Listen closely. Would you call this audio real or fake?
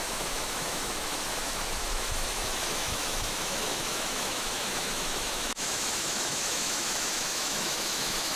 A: fake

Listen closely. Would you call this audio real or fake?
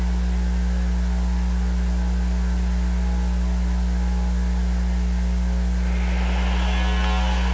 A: real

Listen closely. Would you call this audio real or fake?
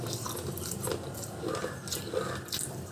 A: real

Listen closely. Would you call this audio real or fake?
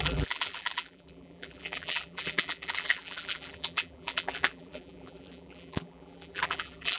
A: fake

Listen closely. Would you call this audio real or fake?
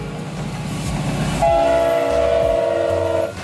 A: real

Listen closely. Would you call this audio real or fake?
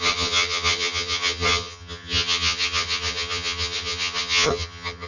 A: fake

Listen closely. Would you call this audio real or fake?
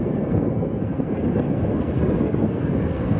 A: fake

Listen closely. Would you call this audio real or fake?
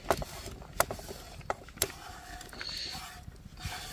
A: real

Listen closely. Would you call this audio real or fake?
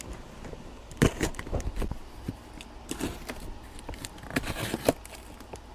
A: real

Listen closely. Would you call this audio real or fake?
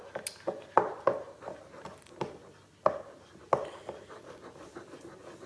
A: real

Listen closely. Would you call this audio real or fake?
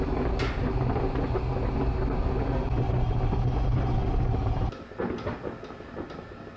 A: real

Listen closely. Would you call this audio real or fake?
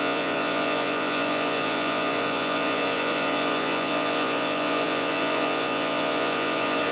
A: fake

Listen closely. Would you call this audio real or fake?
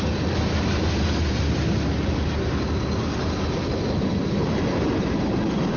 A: real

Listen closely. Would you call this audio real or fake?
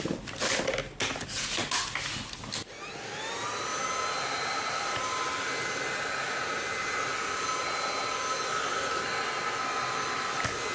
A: real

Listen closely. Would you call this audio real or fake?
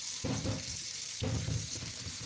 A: real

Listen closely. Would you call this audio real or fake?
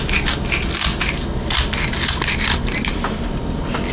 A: real